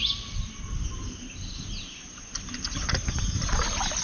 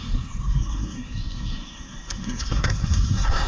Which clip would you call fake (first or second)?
second